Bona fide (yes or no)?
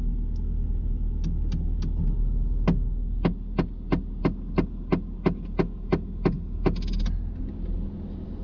yes